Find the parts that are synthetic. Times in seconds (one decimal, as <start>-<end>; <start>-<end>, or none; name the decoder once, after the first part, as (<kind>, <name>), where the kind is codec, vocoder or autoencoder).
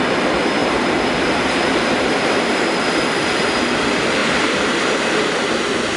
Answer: 0.6-2.1 (vocoder, BigVGAN v2); 4.2-5.6